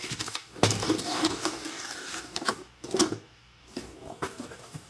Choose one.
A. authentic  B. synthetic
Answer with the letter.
B